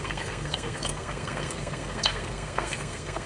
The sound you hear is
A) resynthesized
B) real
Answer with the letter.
A